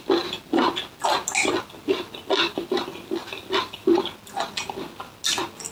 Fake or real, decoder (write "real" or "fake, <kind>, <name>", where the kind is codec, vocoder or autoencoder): real